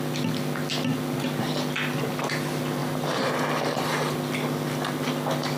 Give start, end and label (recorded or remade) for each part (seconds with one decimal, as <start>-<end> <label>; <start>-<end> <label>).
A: 0.0-2.8 recorded; 2.8-3.9 remade; 3.9-5.6 recorded